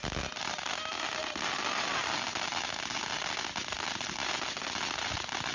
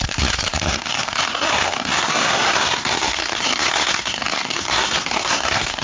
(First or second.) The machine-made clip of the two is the second